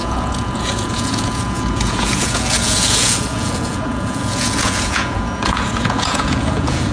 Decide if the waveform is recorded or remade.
remade